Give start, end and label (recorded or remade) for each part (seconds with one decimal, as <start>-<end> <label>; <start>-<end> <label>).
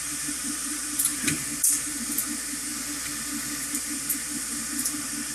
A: 0.0-2.7 remade; 2.7-3.6 recorded; 3.6-5.3 remade